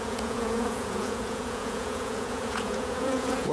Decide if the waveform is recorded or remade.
remade